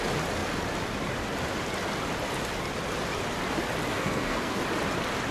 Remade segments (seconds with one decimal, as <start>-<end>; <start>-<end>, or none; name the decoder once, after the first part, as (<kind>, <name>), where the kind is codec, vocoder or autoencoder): 3.9-4.6 (codec, SNAC)